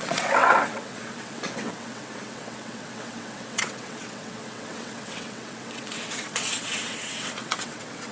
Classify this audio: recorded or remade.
remade